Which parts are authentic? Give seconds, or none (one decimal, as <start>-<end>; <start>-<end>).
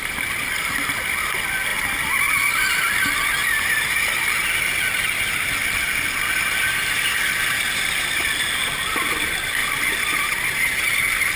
0.0-11.4